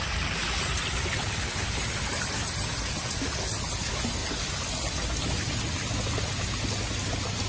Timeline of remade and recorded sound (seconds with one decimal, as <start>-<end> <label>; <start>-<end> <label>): 0.0-1.2 recorded; 1.2-1.8 remade; 1.8-7.5 recorded